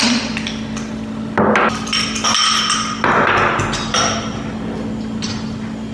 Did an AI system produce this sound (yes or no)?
no